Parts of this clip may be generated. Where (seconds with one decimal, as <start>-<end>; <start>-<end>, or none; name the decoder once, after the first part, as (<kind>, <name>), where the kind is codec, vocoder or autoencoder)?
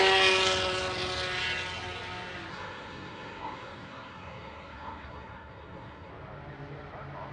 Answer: 2.5-6.1 (codec, SNAC)